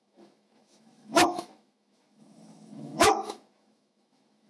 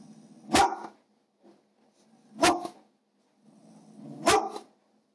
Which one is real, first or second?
second